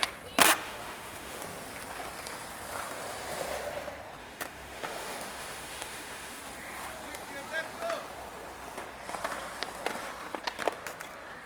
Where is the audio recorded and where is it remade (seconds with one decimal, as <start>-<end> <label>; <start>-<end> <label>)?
0.0-0.6 recorded; 0.6-1.4 remade; 1.4-4.2 recorded; 4.2-6.4 remade; 6.4-11.5 recorded